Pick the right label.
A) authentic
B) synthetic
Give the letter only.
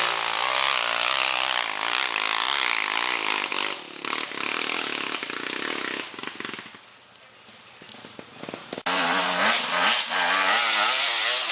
A